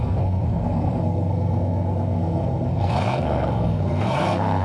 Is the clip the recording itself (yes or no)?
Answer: no